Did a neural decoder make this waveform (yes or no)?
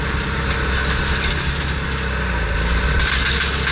no